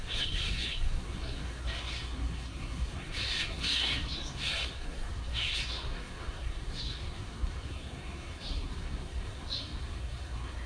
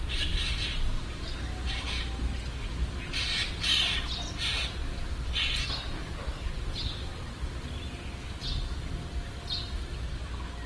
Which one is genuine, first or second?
second